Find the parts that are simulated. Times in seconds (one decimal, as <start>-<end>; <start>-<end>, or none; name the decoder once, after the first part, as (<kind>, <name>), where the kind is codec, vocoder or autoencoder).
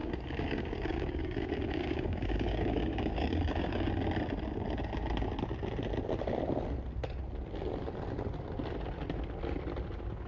0.0-3.9 (codec, DAC)